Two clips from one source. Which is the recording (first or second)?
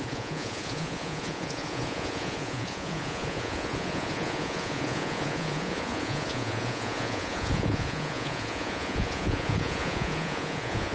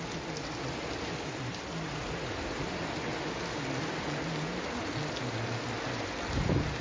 second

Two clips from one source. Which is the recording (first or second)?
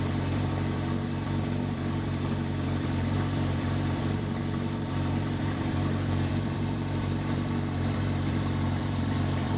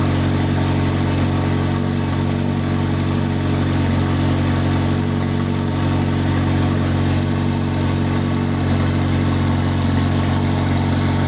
second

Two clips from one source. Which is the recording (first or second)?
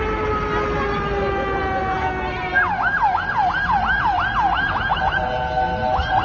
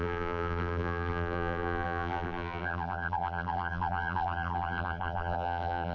first